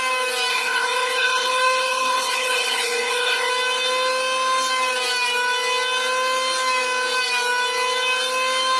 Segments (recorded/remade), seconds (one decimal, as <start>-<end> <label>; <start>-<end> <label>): 0.0-0.5 recorded; 0.5-3.5 remade; 3.5-8.8 recorded